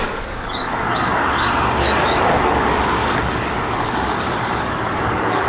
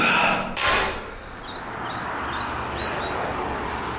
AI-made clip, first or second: first